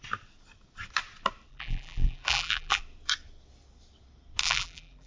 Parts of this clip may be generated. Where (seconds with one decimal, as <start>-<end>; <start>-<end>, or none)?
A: 1.5-2.8; 4.4-5.1

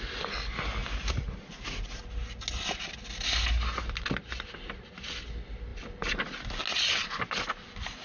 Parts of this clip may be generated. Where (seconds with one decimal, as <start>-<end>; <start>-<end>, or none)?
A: 0.8-1.4

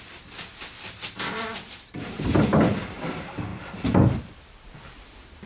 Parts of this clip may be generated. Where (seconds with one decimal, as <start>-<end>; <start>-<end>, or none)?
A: 0.0-2.5; 3.1-5.5

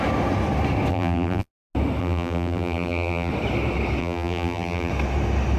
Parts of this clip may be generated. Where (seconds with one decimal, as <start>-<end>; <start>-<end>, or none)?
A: 0.9-1.5; 2.0-3.3; 4.0-4.9

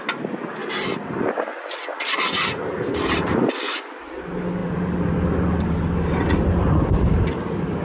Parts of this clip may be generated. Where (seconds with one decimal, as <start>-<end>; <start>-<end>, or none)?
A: none